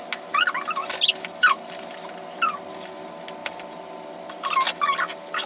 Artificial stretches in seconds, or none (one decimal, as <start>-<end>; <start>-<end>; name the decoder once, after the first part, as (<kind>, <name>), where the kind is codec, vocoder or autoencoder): 1.1-1.8 (vocoder, BigVGAN v2); 3.4-5.5